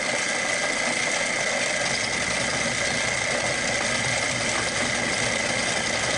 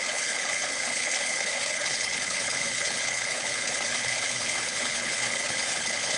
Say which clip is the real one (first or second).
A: first